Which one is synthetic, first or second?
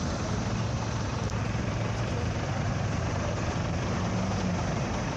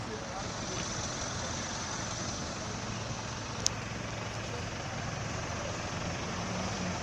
first